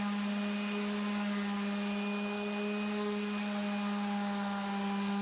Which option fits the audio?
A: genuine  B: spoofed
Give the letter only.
A